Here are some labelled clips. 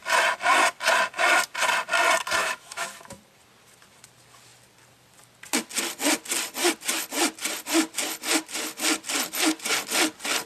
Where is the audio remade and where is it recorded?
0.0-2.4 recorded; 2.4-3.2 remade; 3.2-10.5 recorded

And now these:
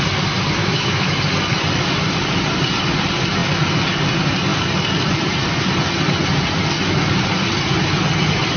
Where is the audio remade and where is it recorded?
0.0-0.6 recorded; 0.6-1.2 remade; 1.2-8.6 recorded

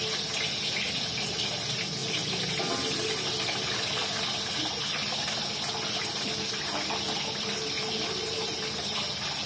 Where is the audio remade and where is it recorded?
0.0-9.5 recorded

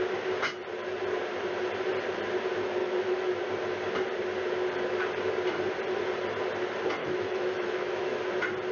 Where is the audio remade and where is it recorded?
0.0-2.8 recorded; 2.8-3.4 remade; 3.4-7.0 recorded; 7.0-8.2 remade; 8.2-8.7 recorded

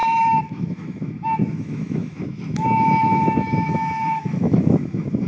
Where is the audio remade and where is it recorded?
0.0-5.3 remade

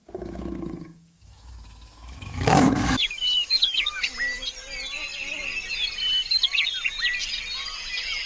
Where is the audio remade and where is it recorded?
0.0-4.0 remade; 4.0-8.3 recorded

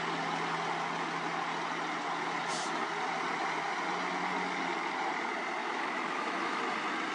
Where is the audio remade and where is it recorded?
0.0-5.6 recorded; 5.6-6.6 remade; 6.6-7.1 recorded